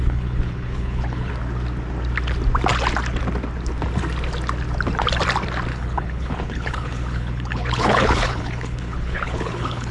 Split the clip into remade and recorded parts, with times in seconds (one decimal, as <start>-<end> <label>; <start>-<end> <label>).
0.0-1.3 remade; 1.3-5.7 recorded; 5.7-9.9 remade